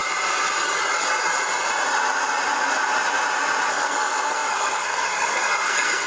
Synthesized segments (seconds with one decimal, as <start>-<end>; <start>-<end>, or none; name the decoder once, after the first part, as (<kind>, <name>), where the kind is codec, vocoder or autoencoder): 3.7-6.1 (codec, SNAC)